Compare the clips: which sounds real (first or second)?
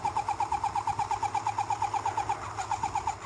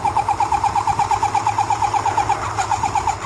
first